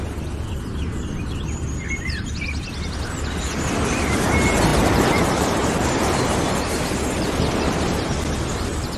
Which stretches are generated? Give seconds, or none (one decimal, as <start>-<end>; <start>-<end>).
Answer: 4.7-7.8